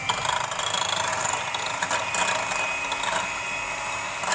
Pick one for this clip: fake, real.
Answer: real